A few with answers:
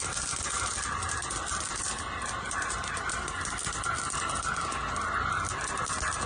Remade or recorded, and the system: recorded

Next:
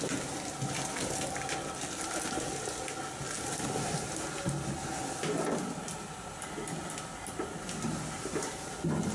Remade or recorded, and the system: recorded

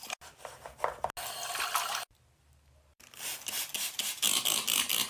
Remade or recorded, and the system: recorded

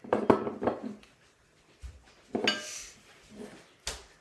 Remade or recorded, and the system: recorded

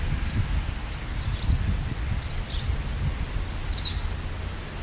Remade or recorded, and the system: remade, vocoder, BigVGAN v2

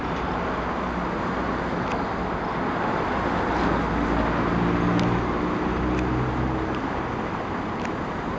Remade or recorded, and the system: recorded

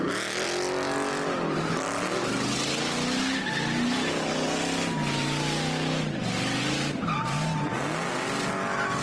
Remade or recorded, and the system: recorded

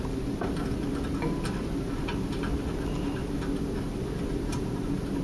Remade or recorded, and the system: recorded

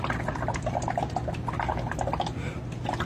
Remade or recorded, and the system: recorded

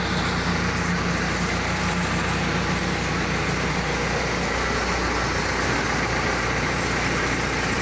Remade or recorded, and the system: recorded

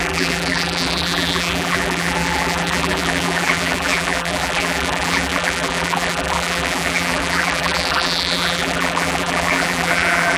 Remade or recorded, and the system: remade, vocoder, BigVGAN v2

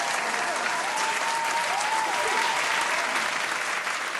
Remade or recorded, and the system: recorded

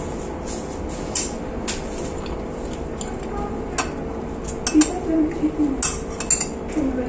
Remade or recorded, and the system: recorded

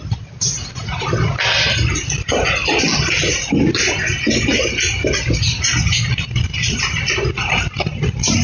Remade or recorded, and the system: recorded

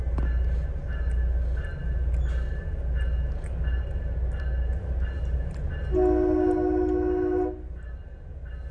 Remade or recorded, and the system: recorded